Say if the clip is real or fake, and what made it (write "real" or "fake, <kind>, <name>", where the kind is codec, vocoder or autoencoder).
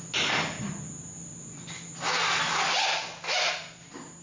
real